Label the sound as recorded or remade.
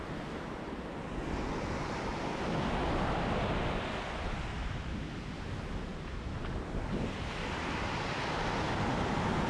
recorded